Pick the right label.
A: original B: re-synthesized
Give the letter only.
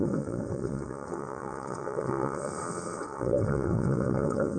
B